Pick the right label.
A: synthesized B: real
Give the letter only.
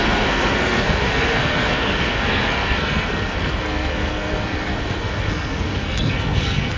A